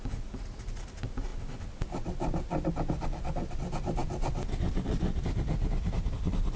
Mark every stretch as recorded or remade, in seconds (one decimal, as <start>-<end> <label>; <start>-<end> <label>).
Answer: 0.0-6.6 recorded